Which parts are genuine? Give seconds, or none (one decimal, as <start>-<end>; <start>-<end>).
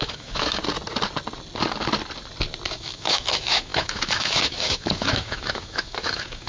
0.6-2.7